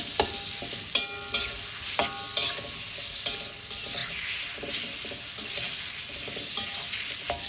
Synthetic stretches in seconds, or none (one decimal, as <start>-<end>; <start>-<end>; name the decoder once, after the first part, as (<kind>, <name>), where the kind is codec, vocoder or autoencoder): none